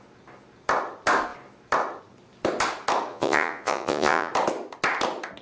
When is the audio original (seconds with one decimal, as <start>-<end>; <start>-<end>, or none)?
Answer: 0.0-3.1; 4.3-5.4